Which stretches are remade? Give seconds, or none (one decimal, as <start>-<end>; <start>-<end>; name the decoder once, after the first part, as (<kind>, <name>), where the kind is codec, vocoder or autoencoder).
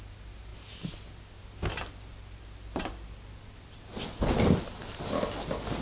none